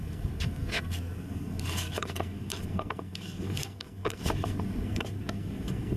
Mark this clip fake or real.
fake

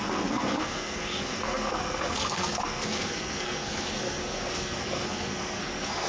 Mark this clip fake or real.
fake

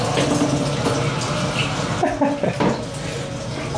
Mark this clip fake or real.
real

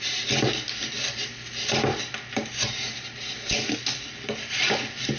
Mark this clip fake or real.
real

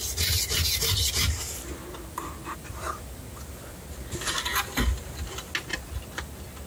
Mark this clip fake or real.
real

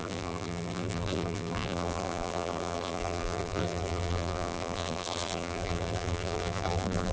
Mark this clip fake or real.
fake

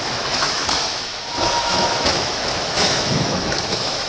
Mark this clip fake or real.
fake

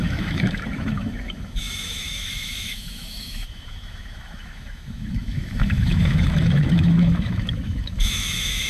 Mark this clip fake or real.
fake